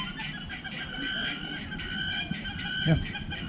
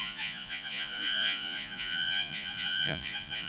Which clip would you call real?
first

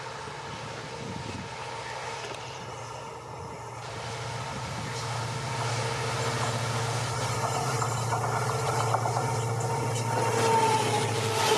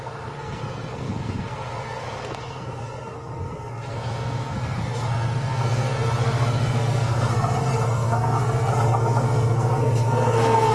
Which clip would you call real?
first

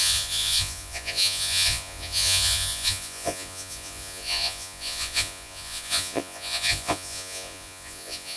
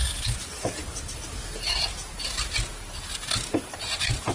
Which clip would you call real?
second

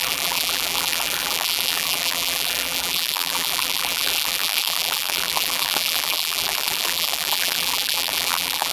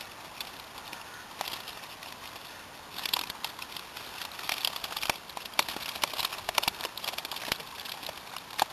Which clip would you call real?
second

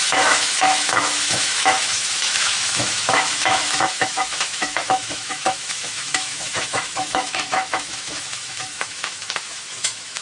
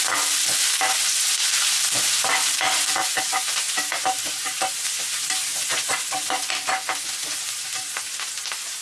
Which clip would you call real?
second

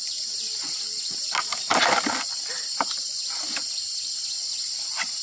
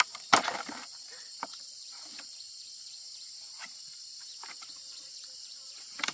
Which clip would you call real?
first